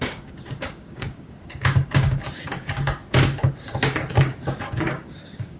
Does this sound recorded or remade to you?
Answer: remade